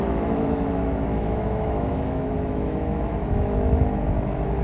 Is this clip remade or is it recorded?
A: remade